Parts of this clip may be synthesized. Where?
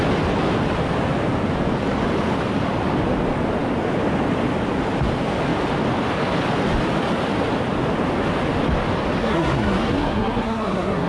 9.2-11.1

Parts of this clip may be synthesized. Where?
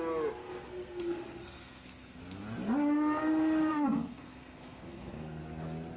0.4-2.2; 3.7-5.4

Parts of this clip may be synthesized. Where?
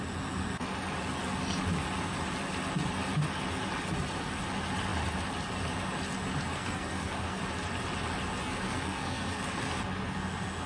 6.5-7.4; 8.4-9.4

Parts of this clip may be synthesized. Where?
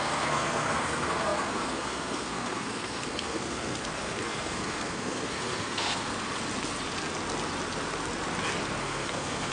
0.0-6.1; 8.8-9.5